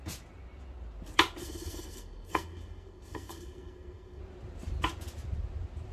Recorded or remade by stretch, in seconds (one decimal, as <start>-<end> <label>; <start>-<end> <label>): 0.0-1.4 recorded; 1.4-4.2 remade; 4.2-5.9 recorded